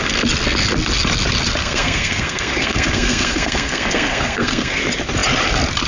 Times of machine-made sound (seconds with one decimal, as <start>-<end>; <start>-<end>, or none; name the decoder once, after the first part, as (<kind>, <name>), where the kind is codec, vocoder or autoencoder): 1.6-4.8 (codec, SNAC)